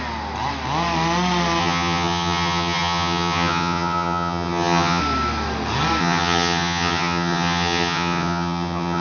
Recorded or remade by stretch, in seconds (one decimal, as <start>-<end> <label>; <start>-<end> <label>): 0.0-1.6 recorded; 1.6-5.0 remade; 5.0-6.0 recorded; 6.0-9.0 remade